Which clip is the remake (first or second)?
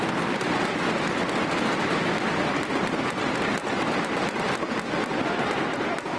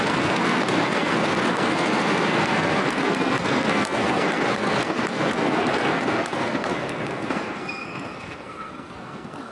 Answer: second